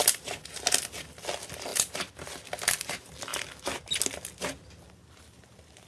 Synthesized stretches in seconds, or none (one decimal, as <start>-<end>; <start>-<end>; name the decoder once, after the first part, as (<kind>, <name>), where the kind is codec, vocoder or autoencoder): 1.7-2.4 (vocoder, BigVGAN v2)

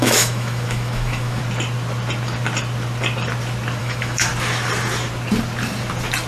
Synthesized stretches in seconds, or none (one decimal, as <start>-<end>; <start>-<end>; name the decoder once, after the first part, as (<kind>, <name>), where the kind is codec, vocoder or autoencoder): 0.0-1.4 (autoencoder, DAC-VAE); 3.8-4.3